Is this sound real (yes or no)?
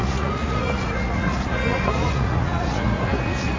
no